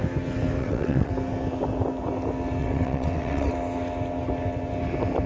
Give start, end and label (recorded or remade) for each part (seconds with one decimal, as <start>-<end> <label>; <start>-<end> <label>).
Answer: 0.0-0.6 recorded; 0.6-1.1 remade; 1.1-2.6 recorded; 2.6-3.5 remade; 3.5-5.3 recorded